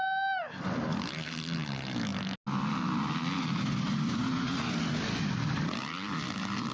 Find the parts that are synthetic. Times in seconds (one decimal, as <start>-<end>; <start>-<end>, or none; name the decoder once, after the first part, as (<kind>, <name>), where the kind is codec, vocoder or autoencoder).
none

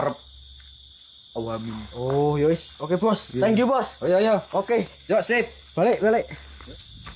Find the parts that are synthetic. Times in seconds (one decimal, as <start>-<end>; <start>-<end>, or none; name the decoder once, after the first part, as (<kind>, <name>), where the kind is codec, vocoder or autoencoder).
none

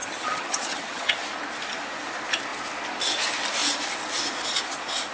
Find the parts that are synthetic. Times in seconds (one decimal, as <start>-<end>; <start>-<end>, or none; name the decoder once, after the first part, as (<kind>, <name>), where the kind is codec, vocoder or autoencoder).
0.0-1.2 (vocoder, HiFi-GAN)

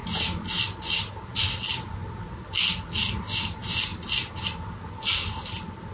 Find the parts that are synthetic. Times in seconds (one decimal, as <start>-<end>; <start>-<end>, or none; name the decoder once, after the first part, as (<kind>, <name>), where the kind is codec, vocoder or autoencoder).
none

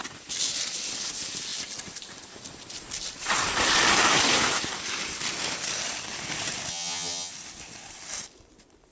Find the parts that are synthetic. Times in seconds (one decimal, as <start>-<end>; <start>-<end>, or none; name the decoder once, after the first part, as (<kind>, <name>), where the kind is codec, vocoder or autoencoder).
6.7-7.3 (vocoder, HiFi-GAN)